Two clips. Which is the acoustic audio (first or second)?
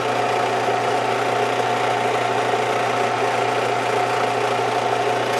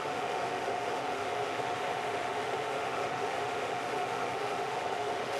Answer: first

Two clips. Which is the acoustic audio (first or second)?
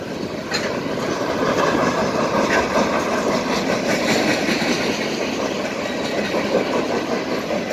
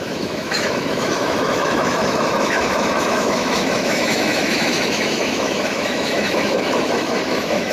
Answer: first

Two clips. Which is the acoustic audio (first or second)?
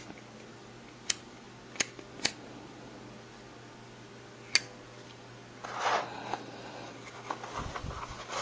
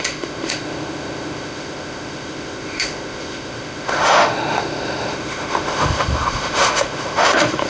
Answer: first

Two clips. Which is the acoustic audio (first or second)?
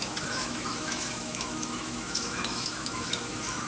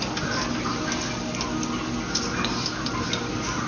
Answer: second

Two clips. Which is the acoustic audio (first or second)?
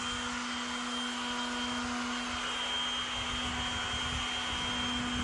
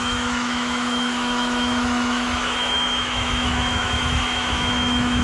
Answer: first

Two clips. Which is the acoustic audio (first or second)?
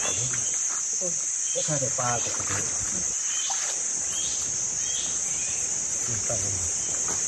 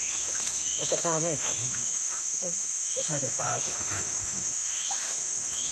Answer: first